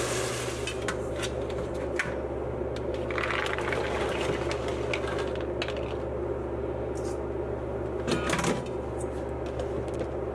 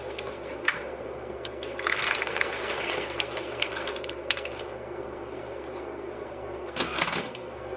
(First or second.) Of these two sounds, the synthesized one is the second